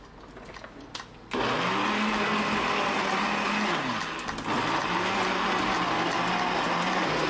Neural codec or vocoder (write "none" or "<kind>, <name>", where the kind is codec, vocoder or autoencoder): none